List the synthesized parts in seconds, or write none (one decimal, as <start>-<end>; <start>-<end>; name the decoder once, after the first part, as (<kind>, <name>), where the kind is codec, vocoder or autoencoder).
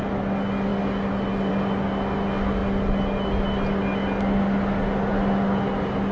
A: none